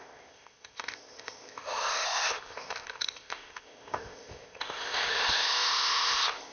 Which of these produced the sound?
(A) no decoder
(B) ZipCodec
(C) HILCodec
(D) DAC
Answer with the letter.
B